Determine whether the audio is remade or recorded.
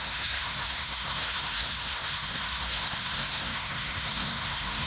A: remade